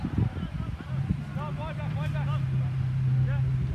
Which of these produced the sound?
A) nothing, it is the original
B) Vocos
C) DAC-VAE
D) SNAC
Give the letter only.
A